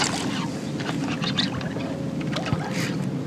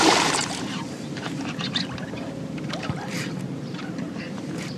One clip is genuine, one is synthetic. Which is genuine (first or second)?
first